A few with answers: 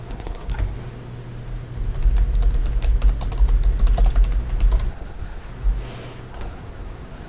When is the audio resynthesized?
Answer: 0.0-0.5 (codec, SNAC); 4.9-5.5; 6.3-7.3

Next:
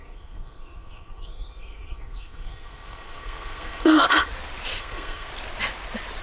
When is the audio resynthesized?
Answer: 0.0-4.3 (codec, SNAC); 4.8-5.3

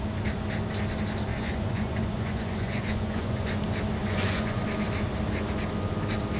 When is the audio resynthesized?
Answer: 1.3-3.6 (vocoder, Vocos); 4.0-4.6

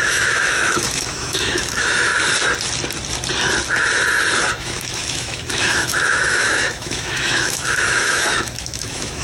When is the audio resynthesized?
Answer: 0.0-2.1 (autoencoder, DAC-VAE); 4.5-9.2

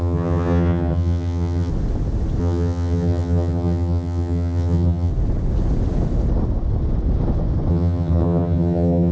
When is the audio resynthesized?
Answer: 0.0-1.7 (vocoder, HiFi-GAN); 2.4-5.1; 7.7-9.1

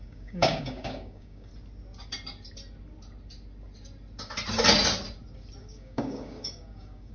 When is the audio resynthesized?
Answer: 0.0-1.5 (codec, DAC); 5.6-7.1

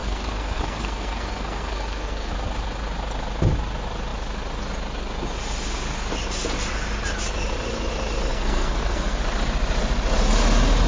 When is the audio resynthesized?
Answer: 0.0-2.3 (codec, SNAC); 8.3-9.2